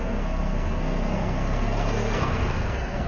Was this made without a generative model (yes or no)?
no